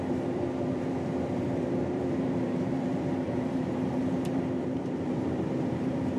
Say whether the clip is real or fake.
fake